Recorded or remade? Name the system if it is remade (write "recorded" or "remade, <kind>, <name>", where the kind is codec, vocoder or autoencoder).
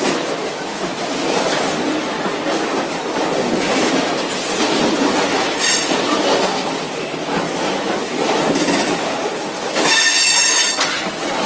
recorded